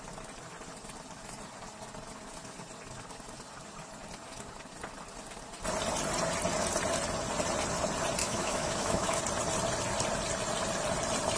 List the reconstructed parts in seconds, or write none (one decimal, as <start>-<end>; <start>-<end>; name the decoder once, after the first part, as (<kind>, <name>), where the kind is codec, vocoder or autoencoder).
8.2-9.2 (autoencoder, DAC-VAE)